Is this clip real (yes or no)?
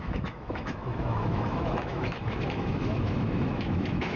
no